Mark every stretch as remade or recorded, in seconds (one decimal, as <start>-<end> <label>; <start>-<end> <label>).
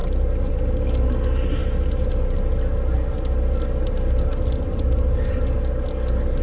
0.0-6.4 recorded